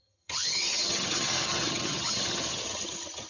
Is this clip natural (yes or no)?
no